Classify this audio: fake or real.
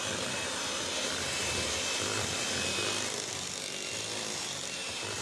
real